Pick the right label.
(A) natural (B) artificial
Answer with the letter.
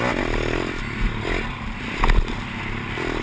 A